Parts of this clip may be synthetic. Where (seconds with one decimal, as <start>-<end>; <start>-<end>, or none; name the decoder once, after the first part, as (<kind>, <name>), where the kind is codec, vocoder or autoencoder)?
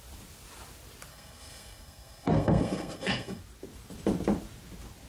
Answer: 1.1-3.4 (codec, SNAC)